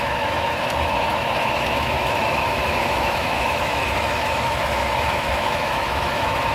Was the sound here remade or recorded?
remade